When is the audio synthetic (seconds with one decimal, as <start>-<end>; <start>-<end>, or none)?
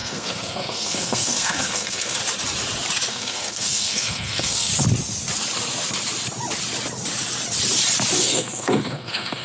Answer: 0.0-2.2; 3.1-4.7; 8.2-9.4